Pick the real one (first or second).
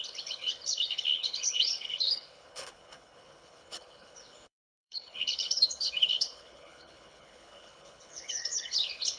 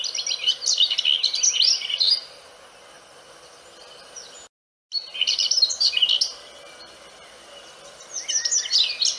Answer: second